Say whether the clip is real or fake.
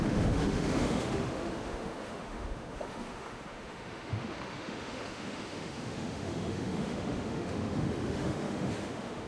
fake